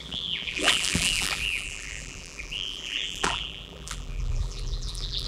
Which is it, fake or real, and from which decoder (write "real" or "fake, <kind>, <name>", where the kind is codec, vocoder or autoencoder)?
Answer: fake, vocoder, BigVGAN v2